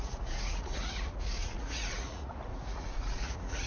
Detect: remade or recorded remade